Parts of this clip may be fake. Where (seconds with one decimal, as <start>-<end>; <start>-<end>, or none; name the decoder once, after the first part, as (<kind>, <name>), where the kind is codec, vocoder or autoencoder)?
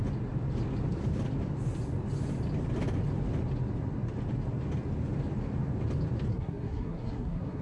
6.3-7.6 (codec, SNAC)